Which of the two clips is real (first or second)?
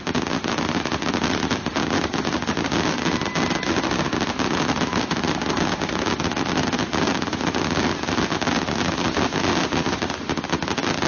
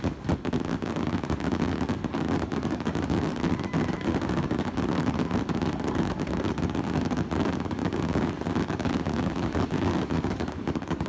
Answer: first